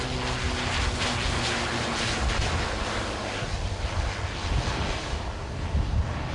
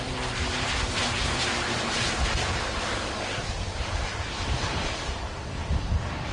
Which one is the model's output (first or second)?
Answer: second